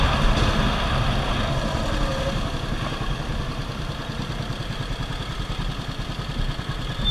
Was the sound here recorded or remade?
recorded